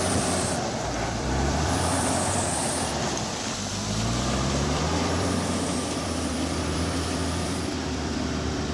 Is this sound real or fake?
fake